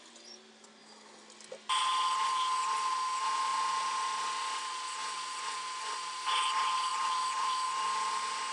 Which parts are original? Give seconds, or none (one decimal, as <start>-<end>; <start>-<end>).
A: 0.0-6.9; 7.5-8.5